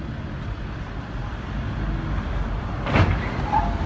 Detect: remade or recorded recorded